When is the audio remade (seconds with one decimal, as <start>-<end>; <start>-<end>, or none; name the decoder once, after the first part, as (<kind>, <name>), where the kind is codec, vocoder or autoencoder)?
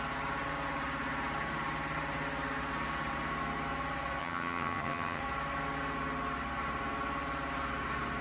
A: 4.2-5.2 (vocoder, HiFi-GAN)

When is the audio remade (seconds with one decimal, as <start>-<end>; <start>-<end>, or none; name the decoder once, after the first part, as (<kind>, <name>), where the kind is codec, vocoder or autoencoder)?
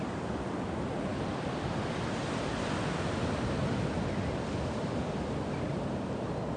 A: none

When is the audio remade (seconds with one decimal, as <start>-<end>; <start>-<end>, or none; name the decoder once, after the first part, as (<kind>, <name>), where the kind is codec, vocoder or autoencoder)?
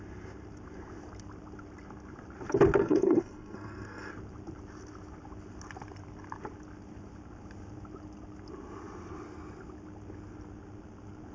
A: 2.8-4.1 (codec, SNAC)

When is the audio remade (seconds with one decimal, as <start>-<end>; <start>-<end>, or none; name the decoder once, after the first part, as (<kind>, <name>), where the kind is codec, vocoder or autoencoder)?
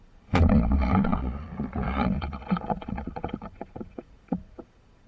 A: 0.0-5.1 (vocoder, Vocos)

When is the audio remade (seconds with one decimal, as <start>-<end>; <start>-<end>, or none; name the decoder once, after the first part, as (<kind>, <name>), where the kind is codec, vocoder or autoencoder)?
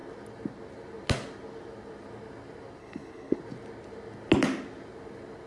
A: 2.8-3.4 (codec, HILCodec)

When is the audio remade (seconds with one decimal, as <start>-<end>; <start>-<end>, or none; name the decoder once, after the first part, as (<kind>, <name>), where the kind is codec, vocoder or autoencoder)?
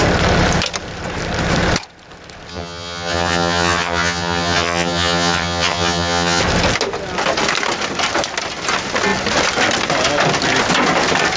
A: 2.5-6.4 (vocoder, HiFi-GAN)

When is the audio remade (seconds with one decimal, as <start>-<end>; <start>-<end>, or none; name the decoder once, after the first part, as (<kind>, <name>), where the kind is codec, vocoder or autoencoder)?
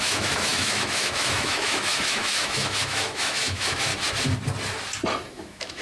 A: 0.0-3.9 (autoencoder, DAC-VAE); 5.3-5.8